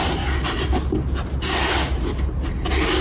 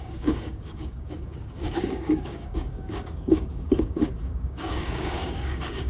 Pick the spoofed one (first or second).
second